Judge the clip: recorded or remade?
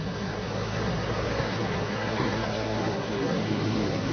remade